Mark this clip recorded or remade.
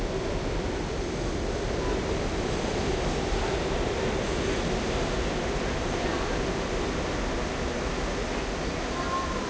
recorded